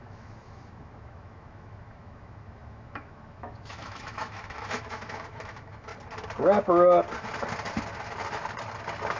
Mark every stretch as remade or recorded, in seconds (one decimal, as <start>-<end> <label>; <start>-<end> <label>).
0.0-5.9 remade; 5.9-9.2 recorded